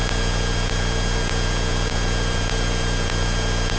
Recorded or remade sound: remade